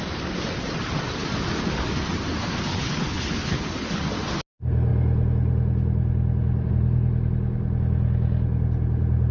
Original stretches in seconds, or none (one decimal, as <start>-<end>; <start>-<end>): 0.0-2.7; 4.0-9.3